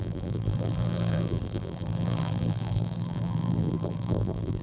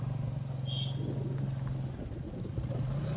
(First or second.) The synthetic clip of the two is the first